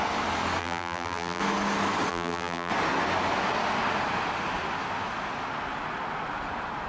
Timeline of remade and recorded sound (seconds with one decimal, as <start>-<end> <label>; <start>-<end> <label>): 0.0-0.6 recorded; 0.6-1.4 remade; 1.4-2.1 recorded; 2.1-2.7 remade; 2.7-6.9 recorded